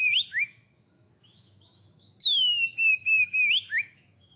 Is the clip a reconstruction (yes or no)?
yes